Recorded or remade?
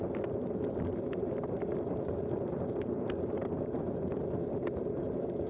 recorded